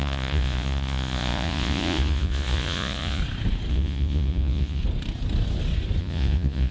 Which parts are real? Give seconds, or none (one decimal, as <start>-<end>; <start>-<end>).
3.2-3.7; 4.8-6.0